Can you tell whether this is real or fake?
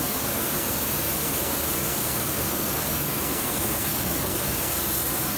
fake